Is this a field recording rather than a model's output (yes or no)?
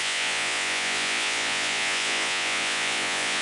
no